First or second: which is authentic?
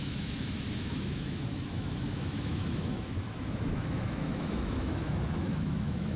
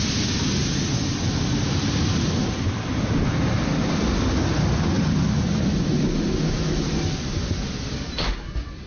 second